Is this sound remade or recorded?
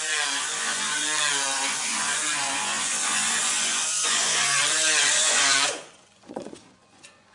remade